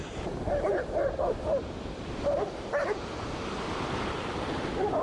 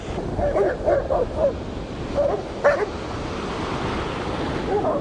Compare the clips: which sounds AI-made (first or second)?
first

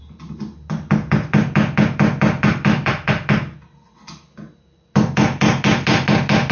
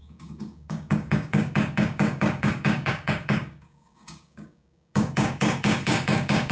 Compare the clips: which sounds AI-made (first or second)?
second